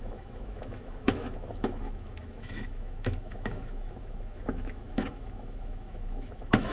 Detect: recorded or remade remade